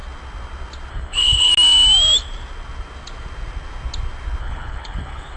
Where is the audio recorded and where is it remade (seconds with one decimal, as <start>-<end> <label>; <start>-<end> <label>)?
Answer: 0.0-0.9 recorded; 0.9-1.5 remade; 1.5-4.4 recorded; 4.4-5.4 remade